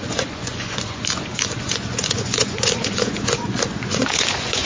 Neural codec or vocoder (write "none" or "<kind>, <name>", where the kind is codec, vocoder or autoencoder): vocoder, Vocos